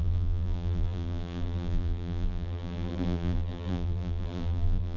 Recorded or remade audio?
remade